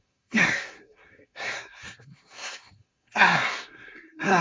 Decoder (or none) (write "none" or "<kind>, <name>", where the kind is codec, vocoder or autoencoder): codec, SNAC